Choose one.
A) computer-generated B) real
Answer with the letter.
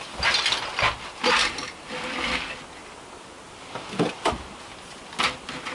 B